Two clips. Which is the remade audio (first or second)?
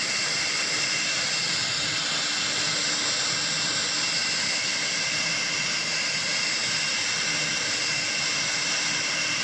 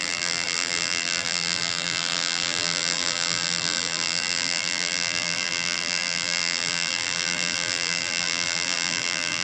second